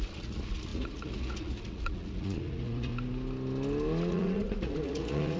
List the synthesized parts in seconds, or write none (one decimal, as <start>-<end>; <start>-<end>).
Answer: 0.0-2.9; 4.1-5.4

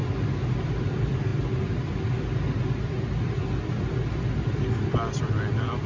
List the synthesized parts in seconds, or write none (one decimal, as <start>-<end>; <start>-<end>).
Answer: 0.6-1.3; 4.1-5.9

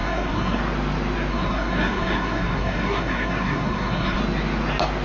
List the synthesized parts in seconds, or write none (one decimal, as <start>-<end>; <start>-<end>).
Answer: 0.0-0.6; 1.3-4.2

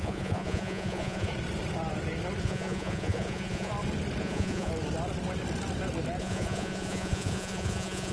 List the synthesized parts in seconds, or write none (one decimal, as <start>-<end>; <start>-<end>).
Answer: 0.0-1.3; 2.4-3.7; 4.2-4.7; 6.2-8.1